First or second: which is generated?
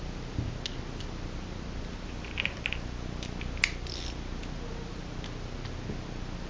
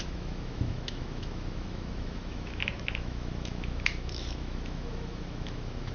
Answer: second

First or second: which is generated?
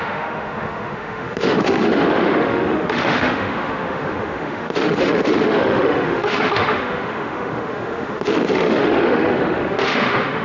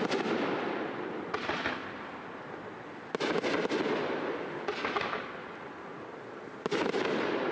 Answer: first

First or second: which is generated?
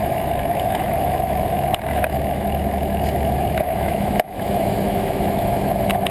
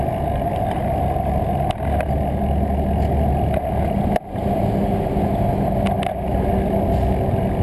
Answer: first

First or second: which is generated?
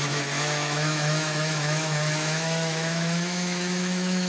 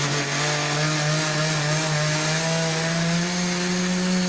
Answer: first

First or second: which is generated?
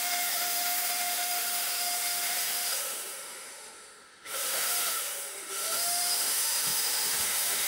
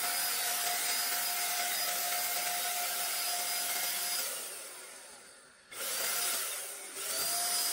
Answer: first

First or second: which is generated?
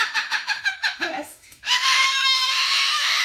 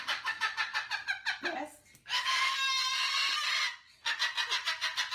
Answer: first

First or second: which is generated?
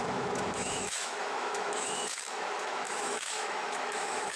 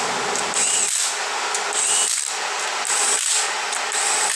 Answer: first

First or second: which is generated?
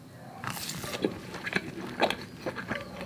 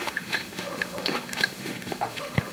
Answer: second